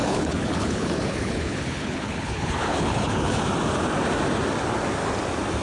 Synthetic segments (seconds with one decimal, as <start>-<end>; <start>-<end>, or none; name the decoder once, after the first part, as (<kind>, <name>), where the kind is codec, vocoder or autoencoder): 0.0-3.4 (codec, HILCodec)